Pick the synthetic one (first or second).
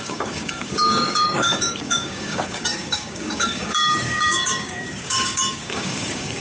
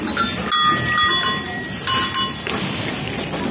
first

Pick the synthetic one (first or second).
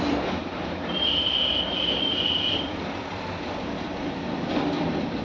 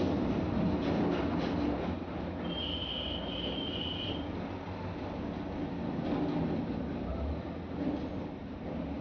first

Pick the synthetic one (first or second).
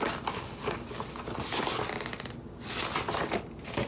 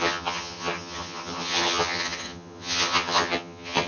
second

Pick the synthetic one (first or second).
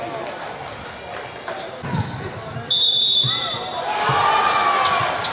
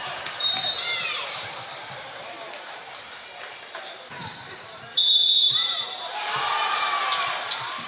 second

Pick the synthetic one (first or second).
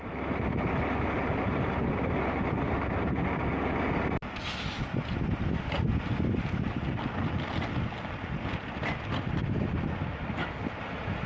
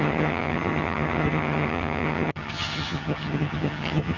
second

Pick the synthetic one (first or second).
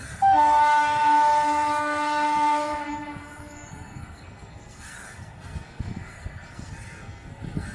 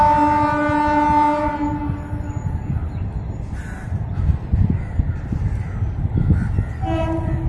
first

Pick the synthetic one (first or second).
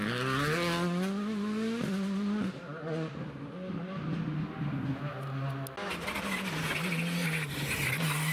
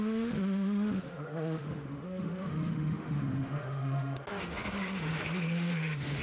second